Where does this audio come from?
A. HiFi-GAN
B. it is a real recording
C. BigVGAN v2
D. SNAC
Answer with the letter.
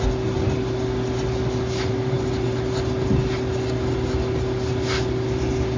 B